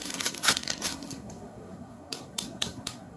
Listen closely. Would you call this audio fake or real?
fake